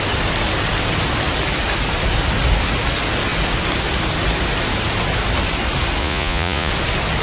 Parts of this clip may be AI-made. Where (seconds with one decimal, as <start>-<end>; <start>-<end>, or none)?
6.0-6.7